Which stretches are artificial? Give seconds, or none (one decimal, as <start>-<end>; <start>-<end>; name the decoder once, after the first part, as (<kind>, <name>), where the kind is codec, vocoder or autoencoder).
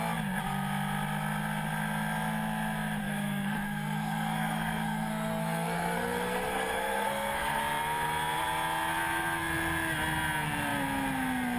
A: 3.0-7.6 (codec, SNAC)